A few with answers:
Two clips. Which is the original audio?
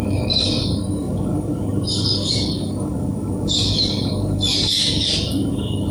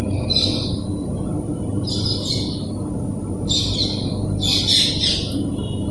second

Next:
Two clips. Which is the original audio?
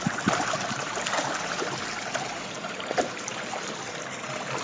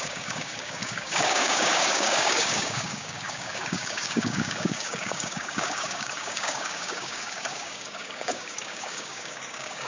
first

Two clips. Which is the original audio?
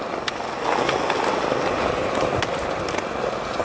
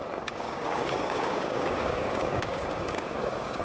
first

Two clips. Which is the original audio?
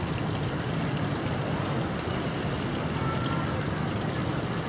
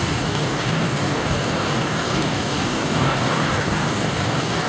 first